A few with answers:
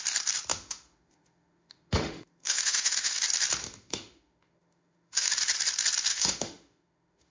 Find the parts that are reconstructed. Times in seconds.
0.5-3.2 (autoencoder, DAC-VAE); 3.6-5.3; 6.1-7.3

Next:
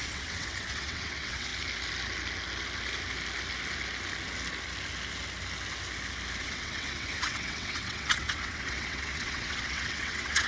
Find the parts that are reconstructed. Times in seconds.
0.0-1.5 (vocoder, WaveNeXt); 6.4-10.5

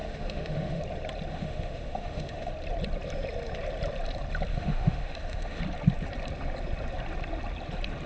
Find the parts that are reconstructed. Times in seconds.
0.0-0.8 (autoencoder, DAC-VAE); 1.3-2.5; 4.5-5.6

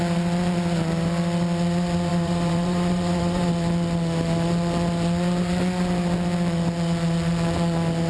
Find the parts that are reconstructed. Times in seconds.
2.1-3.5 (vocoder, Vocos)

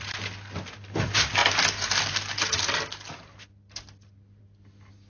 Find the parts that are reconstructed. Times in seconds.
none